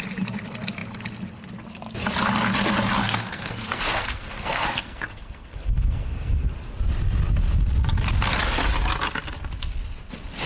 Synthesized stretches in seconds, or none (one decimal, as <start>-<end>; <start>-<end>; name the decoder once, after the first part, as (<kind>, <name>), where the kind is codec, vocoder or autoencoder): 3.0-6.5 (codec, SNAC)